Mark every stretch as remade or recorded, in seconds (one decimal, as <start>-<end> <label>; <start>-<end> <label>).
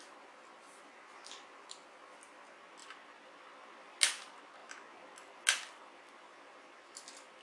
0.0-7.4 recorded